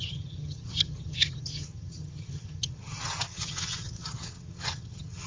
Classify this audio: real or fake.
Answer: fake